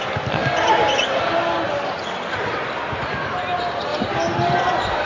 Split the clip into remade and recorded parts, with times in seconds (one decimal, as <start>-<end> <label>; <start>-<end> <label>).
0.0-5.1 recorded